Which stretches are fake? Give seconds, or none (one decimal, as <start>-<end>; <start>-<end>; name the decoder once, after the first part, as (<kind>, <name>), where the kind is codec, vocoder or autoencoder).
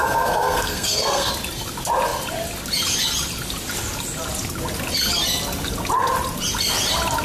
0.0-1.3 (codec, SNAC)